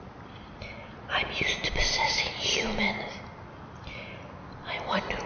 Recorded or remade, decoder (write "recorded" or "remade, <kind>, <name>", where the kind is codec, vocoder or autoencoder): recorded